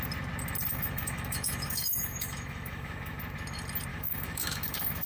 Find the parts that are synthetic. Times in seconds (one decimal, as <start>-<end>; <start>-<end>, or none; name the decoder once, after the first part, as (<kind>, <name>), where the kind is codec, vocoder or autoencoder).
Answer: 0.7-3.2 (autoencoder, DAC-VAE); 3.9-5.1